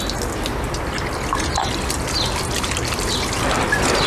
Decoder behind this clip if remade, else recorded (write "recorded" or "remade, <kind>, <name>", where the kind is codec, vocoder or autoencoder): recorded